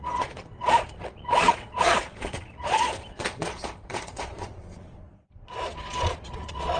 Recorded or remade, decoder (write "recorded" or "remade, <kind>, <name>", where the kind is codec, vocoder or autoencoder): remade, vocoder, Vocos